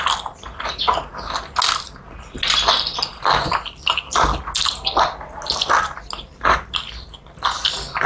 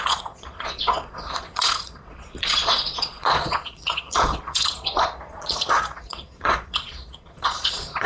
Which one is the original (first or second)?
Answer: first